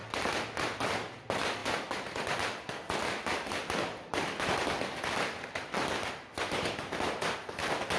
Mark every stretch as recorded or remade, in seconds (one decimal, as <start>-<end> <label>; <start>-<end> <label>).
0.0-8.0 recorded